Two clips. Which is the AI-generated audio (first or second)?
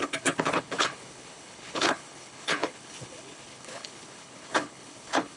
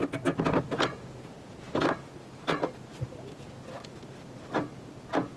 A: first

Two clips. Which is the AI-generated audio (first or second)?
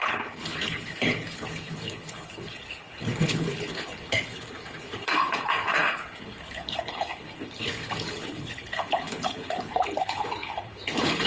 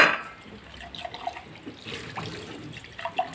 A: first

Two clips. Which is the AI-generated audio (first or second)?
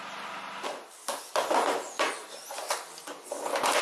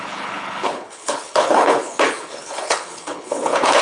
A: second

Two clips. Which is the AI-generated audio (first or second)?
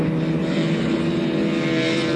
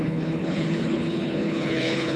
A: second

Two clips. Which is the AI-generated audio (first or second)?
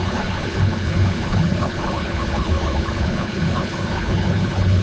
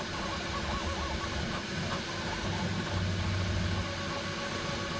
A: first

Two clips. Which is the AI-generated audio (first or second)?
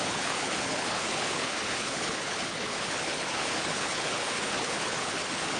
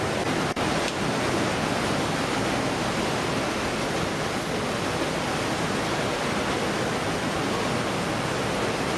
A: first